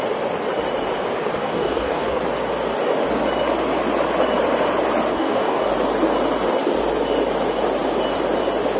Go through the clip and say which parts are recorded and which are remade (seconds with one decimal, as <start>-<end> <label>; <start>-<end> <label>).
0.0-1.4 recorded; 1.4-2.2 remade; 2.2-5.1 recorded; 5.1-5.7 remade; 5.7-8.8 recorded